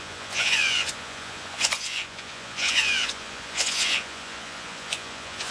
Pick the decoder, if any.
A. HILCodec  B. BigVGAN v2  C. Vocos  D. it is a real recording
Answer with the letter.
C